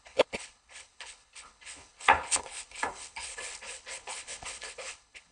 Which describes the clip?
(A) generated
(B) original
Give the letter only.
A